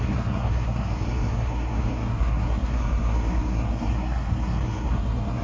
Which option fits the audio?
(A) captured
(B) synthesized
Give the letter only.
B